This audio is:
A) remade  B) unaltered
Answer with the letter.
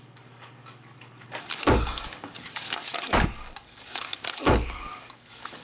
A